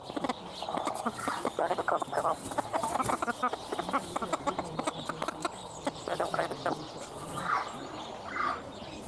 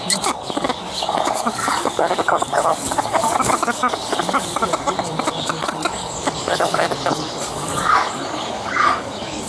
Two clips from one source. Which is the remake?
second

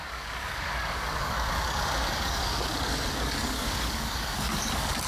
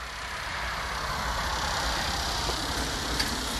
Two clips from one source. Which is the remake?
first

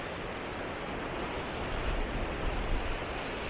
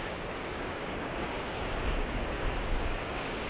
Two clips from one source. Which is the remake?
second